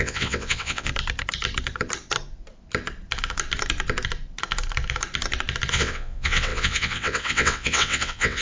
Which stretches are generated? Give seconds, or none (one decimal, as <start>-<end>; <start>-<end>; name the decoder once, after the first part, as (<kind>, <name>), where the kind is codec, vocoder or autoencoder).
0.0-0.9 (vocoder, WaveNeXt); 5.7-8.4